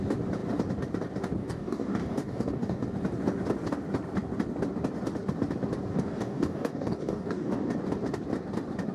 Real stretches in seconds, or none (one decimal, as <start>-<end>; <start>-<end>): 0.0-1.4; 2.8-5.9; 7.7-8.9